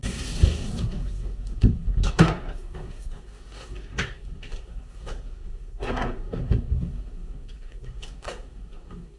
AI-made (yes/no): yes